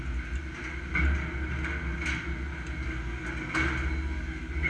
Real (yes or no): yes